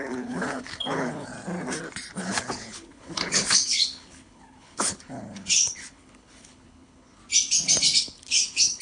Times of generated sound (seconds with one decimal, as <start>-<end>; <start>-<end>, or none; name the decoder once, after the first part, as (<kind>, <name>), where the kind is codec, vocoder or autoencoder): 0.0-1.3 (codec, HILCodec); 2.1-7.2; 8.0-8.8